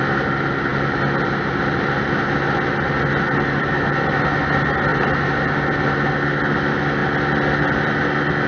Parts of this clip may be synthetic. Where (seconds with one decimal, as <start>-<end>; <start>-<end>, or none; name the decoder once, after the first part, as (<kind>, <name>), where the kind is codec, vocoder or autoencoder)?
none